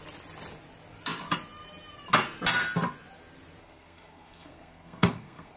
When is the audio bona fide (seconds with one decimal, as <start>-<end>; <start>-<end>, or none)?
0.0-3.6